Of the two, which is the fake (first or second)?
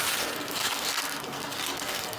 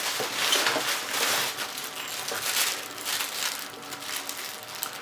first